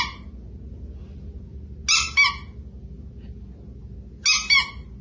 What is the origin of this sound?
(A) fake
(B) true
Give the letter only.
B